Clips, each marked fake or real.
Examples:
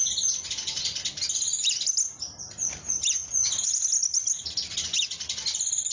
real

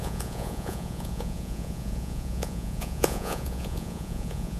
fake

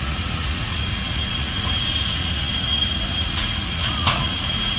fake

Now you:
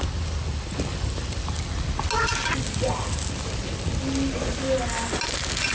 real